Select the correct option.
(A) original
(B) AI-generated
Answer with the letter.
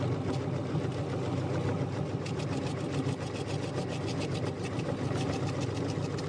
A